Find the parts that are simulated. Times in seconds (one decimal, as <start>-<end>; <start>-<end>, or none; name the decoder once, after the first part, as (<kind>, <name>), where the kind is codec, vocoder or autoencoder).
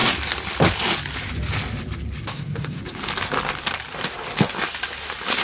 2.3-2.8 (codec, SNAC)